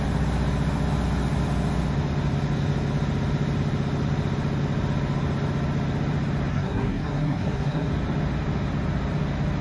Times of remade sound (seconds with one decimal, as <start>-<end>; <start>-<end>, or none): 6.5-7.9